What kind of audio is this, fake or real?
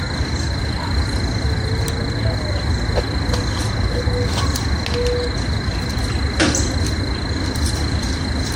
real